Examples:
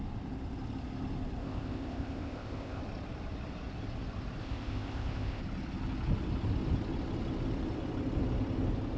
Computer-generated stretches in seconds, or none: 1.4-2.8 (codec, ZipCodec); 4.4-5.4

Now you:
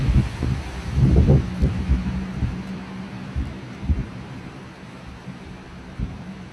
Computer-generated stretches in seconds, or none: 0.0-6.5 (vocoder, BigVGAN v2)

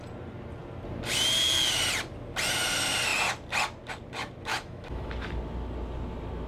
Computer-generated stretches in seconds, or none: 4.5-5.1 (autoencoder, DAC-VAE)

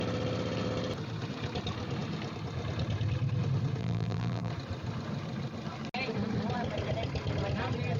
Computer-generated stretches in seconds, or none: 3.8-4.5 (vocoder, BigVGAN v2)